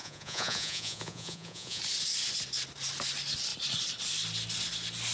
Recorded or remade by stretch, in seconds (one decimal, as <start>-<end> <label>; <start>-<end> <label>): 0.0-1.8 remade; 1.8-5.1 recorded